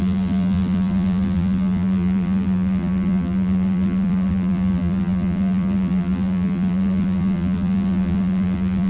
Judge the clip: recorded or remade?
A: remade